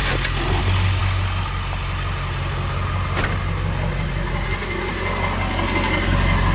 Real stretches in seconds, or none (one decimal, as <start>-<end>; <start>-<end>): 0.0-6.5